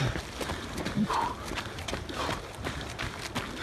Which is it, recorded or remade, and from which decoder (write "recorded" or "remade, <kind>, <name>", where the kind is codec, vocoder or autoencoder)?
recorded